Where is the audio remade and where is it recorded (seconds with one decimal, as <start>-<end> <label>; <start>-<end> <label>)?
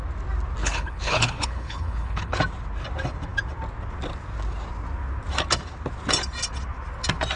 0.0-0.6 recorded; 0.6-2.4 remade; 2.4-7.4 recorded